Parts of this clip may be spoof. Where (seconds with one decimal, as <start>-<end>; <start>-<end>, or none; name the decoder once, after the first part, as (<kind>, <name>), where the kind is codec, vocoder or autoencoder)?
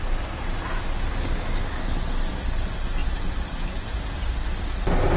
3.0-4.0 (vocoder, BigVGAN v2)